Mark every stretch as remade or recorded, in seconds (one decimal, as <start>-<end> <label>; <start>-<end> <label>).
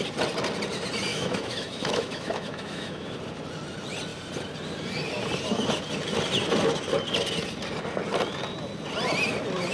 0.0-1.1 recorded; 1.1-3.2 remade; 3.2-9.7 recorded